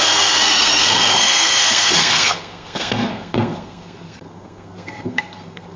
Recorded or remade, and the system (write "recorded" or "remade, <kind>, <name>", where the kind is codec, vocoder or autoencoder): remade, codec, SNAC